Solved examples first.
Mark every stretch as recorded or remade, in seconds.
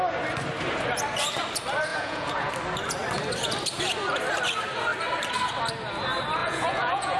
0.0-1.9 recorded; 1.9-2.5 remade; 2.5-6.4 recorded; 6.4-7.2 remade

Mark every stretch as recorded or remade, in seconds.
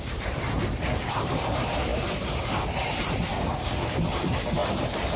0.0-3.3 remade; 3.3-4.1 recorded; 4.1-4.6 remade; 4.6-5.2 recorded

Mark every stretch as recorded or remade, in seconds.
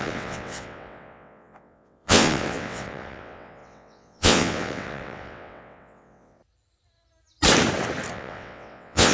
0.0-6.4 remade; 6.4-8.1 recorded; 8.1-9.1 remade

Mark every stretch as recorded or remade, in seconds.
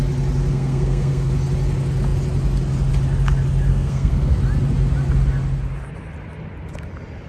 0.0-0.5 recorded; 0.5-1.3 remade; 1.3-3.7 recorded; 3.7-4.4 remade; 4.4-7.3 recorded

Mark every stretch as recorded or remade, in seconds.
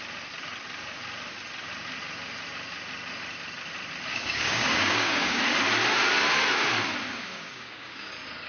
0.0-4.1 recorded; 4.1-5.4 remade; 5.4-7.1 recorded; 7.1-8.1 remade; 8.1-8.5 recorded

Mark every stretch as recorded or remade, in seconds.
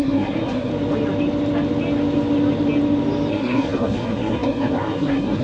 0.0-0.7 remade; 0.7-3.3 recorded; 3.3-5.4 remade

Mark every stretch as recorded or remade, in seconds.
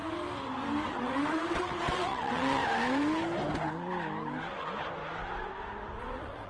0.0-0.9 recorded; 0.9-2.6 remade; 2.6-6.0 recorded; 6.0-6.5 remade